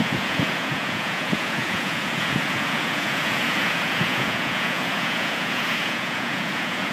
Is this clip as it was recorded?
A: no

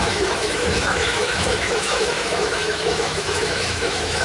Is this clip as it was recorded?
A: no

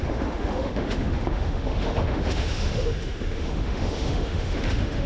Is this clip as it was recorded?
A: no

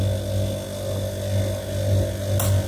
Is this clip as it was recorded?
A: yes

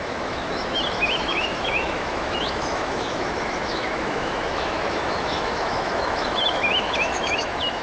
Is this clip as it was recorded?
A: no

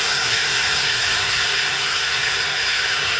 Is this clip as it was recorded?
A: no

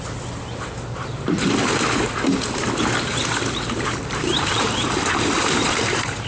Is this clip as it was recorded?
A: no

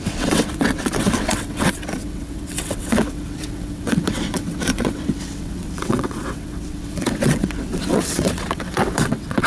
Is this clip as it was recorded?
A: no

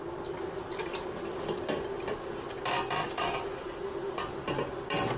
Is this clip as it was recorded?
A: yes